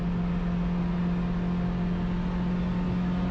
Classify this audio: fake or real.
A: real